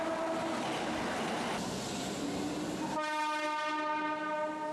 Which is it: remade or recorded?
recorded